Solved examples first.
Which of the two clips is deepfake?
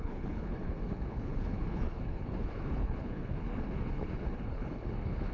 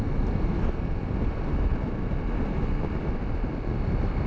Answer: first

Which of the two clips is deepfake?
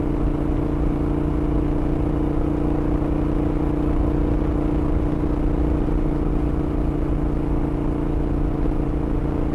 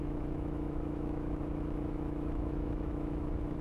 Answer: second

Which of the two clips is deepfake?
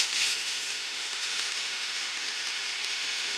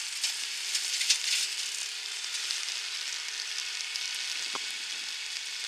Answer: first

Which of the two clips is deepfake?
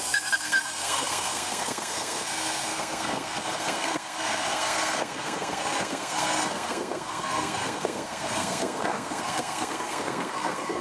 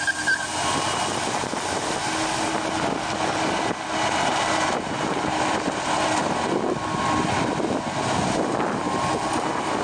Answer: first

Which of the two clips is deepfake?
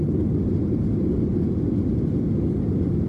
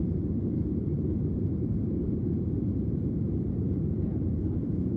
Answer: second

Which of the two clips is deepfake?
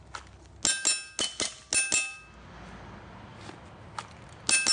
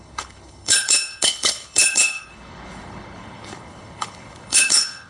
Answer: second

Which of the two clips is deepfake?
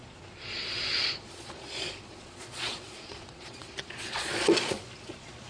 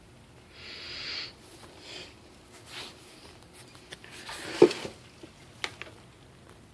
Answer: first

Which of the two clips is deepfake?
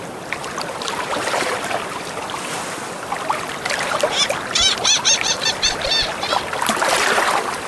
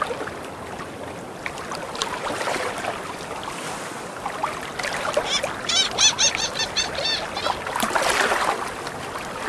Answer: first